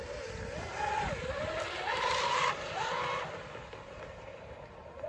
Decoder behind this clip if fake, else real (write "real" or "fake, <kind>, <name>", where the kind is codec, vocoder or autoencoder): real